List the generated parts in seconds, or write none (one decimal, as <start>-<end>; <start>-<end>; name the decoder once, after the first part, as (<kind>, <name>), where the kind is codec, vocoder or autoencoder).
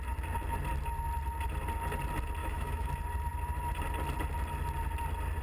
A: 2.4-2.9 (autoencoder, DAC-VAE)